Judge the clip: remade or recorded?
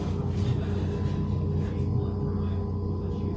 recorded